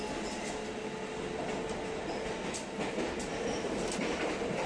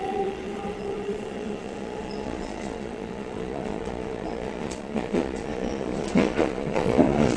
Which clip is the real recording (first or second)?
first